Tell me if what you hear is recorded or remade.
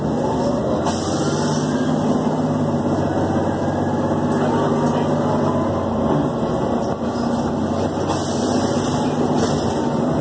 recorded